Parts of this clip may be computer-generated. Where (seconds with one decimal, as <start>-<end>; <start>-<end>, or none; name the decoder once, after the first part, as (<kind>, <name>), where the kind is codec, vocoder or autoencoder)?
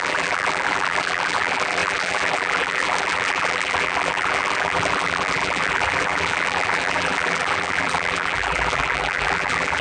0.0-9.8 (vocoder, BigVGAN v2)